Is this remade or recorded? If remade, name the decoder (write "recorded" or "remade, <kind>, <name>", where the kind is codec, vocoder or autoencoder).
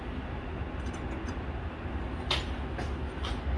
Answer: recorded